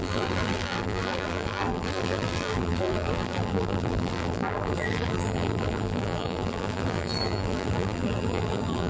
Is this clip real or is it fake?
fake